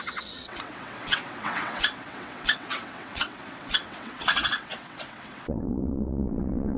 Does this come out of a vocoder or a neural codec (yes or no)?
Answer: yes